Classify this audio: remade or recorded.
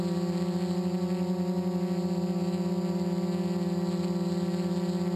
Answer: recorded